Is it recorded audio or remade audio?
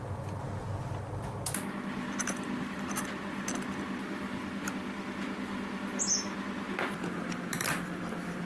recorded